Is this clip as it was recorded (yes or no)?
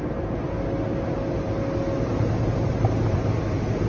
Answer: yes